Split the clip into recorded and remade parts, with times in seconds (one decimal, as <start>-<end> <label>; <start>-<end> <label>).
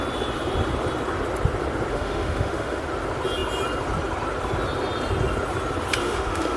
0.0-1.9 recorded; 1.9-2.8 remade; 2.8-6.0 recorded; 6.0-6.6 remade